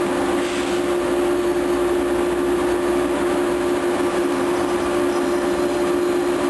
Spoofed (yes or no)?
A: no